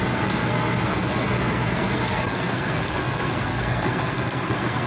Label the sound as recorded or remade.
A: remade